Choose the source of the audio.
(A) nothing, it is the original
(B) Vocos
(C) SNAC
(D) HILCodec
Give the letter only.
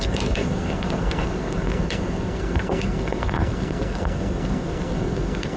C